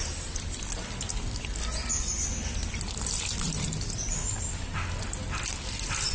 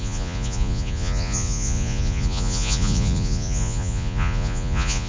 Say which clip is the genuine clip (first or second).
first